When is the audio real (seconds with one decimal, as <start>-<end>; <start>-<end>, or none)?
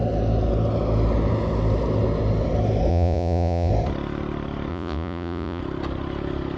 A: 0.0-2.9; 3.7-4.7; 5.6-6.6